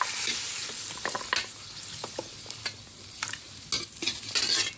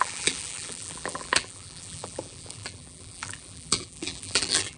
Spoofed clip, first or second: second